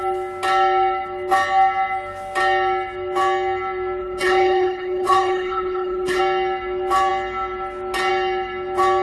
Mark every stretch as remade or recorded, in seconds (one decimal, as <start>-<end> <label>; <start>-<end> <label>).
0.0-4.0 recorded; 4.0-6.2 remade; 6.2-9.0 recorded